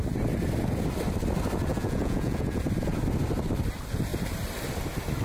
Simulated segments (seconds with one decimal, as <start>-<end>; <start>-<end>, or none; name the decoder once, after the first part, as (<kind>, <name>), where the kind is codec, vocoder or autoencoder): 1.7-2.6 (vocoder, Vocos)